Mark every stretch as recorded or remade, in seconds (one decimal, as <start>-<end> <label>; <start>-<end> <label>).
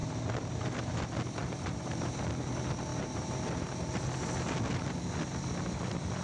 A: 0.0-1.4 recorded; 1.4-2.2 remade; 2.2-2.9 recorded; 2.9-3.9 remade; 3.9-6.2 recorded